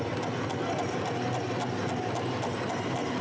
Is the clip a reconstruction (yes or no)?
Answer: no